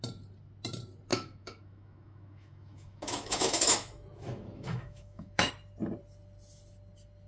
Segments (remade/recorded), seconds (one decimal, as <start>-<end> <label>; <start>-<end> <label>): 0.0-1.1 recorded; 1.1-5.5 remade; 5.5-7.3 recorded